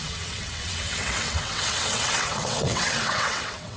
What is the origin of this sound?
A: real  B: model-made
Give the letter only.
B